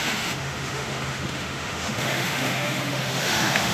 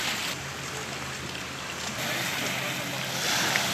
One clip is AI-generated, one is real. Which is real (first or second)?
second